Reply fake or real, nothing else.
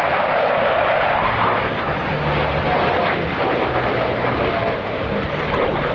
real